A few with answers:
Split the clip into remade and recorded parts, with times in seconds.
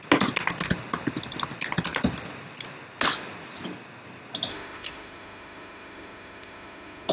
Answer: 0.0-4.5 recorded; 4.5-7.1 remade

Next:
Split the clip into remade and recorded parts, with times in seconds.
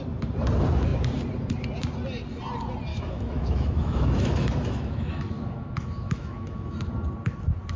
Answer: 0.0-2.9 recorded; 2.9-6.8 remade; 6.8-7.8 recorded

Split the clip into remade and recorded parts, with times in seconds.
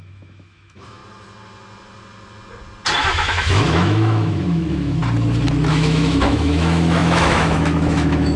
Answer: 0.0-1.0 remade; 1.0-3.1 recorded; 3.1-5.0 remade; 5.0-5.7 recorded; 5.7-8.4 remade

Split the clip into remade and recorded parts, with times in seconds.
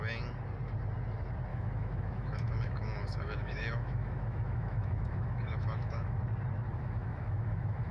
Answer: 0.0-1.5 recorded; 1.5-6.2 remade; 6.2-6.7 recorded; 6.7-7.9 remade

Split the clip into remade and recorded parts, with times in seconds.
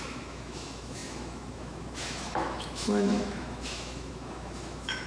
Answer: 0.0-5.1 remade